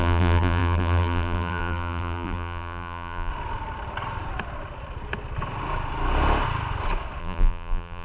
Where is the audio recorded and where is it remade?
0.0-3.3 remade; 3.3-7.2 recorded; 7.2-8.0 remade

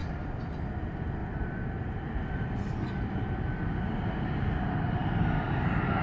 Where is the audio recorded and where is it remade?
0.0-0.5 remade; 0.5-1.2 recorded; 1.2-3.8 remade; 3.8-6.0 recorded

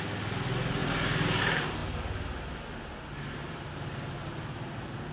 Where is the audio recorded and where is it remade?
0.0-0.8 recorded; 0.8-1.4 remade; 1.4-5.1 recorded

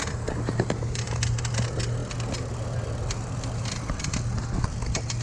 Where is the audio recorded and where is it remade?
0.0-5.2 recorded

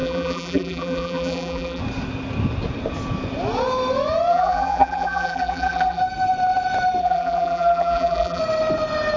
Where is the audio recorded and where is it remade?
0.0-1.8 remade; 1.8-4.3 recorded; 4.3-6.0 remade; 6.0-7.0 recorded; 7.0-8.4 remade; 8.4-9.2 recorded

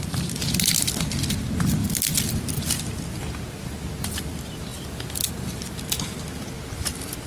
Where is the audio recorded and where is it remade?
0.0-4.7 recorded; 4.7-5.8 remade; 5.8-7.3 recorded